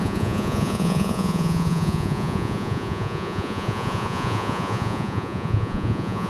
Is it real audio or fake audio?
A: fake